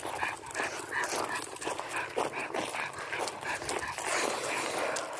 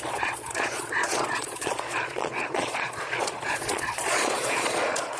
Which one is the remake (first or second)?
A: second